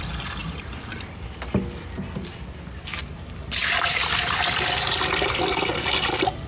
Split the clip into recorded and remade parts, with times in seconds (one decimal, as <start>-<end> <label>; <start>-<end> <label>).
0.0-0.4 recorded; 0.4-1.4 remade; 1.4-6.5 recorded